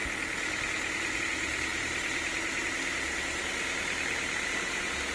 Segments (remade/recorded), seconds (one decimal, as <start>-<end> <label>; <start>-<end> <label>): 0.0-5.1 recorded